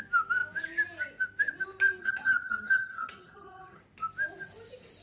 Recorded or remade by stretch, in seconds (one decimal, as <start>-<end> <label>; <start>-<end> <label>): 0.0-2.0 recorded; 2.0-3.8 remade; 3.8-5.0 recorded